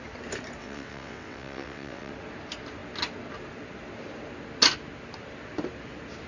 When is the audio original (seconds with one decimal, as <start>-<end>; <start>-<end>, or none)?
0.0-0.6; 2.1-6.3